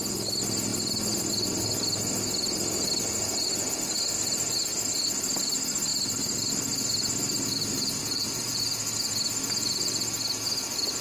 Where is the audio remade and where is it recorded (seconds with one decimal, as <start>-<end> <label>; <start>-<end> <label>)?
0.0-8.0 recorded; 8.0-8.6 remade; 8.6-11.0 recorded